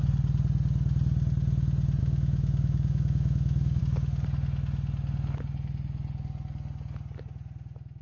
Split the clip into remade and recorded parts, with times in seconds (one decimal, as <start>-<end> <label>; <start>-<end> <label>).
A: 0.0-2.0 recorded; 2.0-3.8 remade; 3.8-8.0 recorded